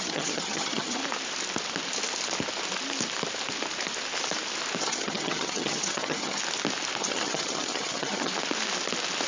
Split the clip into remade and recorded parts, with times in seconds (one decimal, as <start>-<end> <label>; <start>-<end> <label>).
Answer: 0.0-1.0 remade; 1.0-4.8 recorded; 4.8-6.4 remade; 6.4-7.0 recorded; 7.0-8.3 remade; 8.3-9.3 recorded